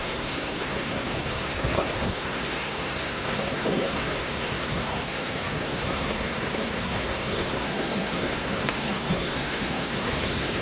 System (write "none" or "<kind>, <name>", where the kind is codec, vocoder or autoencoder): codec, SNAC